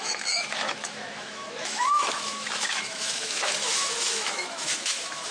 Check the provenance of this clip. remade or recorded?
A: remade